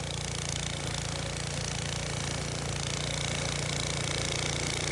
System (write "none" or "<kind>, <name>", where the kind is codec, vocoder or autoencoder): none